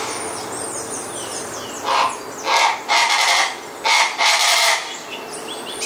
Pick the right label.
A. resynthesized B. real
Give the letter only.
B